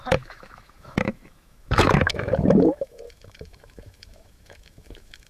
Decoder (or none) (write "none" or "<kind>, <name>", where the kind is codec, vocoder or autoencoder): autoencoder, DAC-VAE